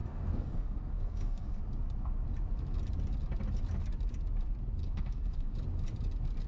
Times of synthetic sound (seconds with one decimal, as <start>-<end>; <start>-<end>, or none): 0.0-1.6; 4.8-5.5